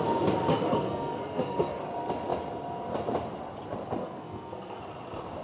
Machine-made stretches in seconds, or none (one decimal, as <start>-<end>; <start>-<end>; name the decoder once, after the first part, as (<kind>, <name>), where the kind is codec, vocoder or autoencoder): 0.5-1.8 (codec, SNAC); 4.0-4.8